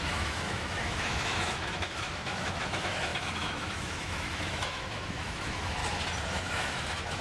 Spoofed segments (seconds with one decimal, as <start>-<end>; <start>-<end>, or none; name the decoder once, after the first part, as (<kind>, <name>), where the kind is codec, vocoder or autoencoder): 0.0-5.8 (autoencoder, DAC-VAE); 6.4-7.2